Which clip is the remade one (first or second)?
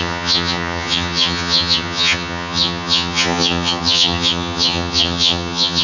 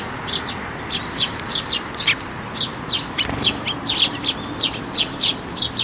first